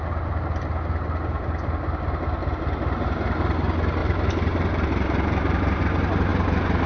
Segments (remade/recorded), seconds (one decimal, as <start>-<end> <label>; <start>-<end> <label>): 0.0-4.0 recorded; 4.0-5.8 remade; 5.8-6.3 recorded; 6.3-6.9 remade